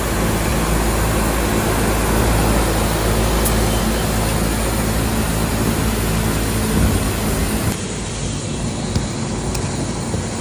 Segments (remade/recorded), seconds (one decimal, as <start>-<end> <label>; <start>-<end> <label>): 0.0-10.4 recorded